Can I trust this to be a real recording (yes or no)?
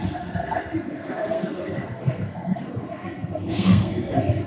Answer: no